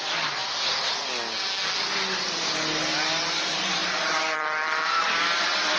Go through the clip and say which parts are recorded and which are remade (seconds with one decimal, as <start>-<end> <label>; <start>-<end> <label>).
0.0-0.4 remade; 0.4-3.4 recorded; 3.4-5.8 remade